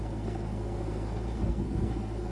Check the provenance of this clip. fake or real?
fake